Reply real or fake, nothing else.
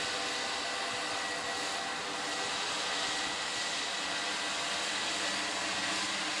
real